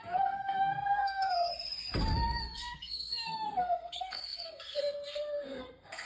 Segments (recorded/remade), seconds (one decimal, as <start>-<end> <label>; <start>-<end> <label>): 0.0-1.5 remade; 1.5-2.4 recorded; 2.4-6.1 remade